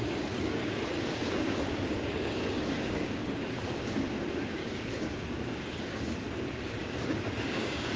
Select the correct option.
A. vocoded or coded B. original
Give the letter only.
A